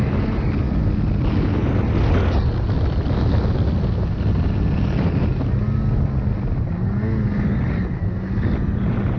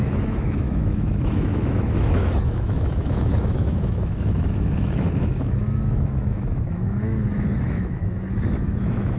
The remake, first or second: second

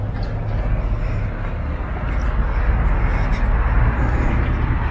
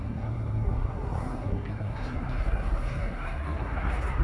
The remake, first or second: second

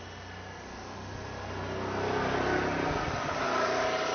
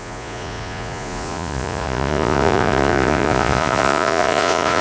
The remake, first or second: second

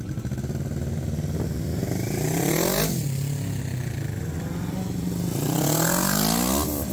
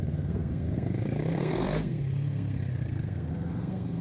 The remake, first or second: second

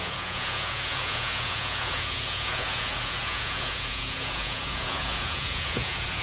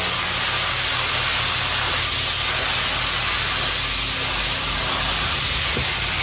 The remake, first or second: first